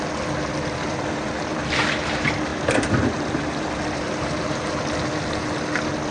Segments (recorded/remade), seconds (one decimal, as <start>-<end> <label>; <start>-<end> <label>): 0.0-0.9 recorded; 0.9-1.7 remade; 1.7-2.5 recorded; 2.5-4.8 remade; 4.8-6.1 recorded